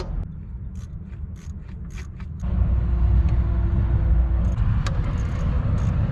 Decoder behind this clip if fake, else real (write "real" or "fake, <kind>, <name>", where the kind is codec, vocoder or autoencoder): real